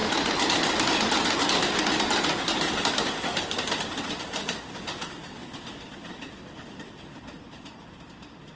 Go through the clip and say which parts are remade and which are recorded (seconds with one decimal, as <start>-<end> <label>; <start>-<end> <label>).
0.0-5.4 recorded; 5.4-6.3 remade; 6.3-8.6 recorded